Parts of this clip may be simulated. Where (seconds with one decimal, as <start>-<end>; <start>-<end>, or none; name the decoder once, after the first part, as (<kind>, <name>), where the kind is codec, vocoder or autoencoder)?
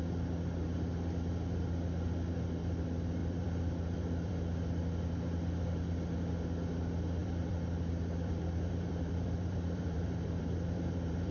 3.2-4.3 (vocoder, BigVGAN v2); 7.2-11.3